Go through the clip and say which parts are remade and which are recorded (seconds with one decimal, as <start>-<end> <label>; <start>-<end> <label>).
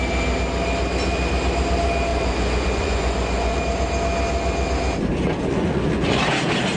0.0-2.1 recorded; 2.1-3.6 remade; 3.6-5.5 recorded; 5.5-6.2 remade; 6.2-6.8 recorded